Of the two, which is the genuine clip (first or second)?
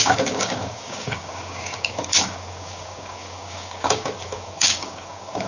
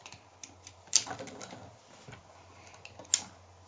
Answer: second